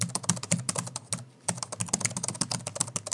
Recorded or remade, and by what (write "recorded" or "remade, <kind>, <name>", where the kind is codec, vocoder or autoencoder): recorded